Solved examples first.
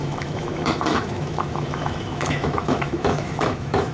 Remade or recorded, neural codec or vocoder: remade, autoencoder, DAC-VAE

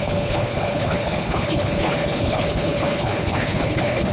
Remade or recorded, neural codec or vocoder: remade, codec, HILCodec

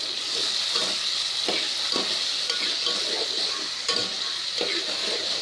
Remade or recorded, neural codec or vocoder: recorded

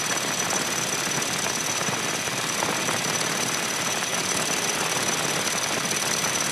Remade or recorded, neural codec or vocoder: remade, vocoder, BigVGAN v2